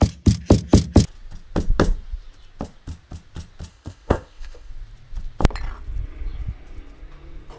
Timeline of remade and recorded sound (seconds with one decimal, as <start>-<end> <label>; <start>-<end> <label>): 0.0-3.7 recorded; 3.7-4.7 remade; 4.7-7.6 recorded